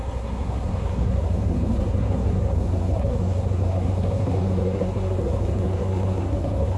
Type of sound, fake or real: fake